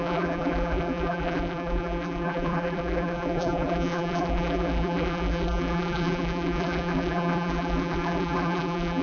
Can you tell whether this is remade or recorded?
remade